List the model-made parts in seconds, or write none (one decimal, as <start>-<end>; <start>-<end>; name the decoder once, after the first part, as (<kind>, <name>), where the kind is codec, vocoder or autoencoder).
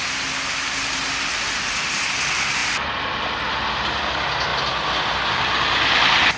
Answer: none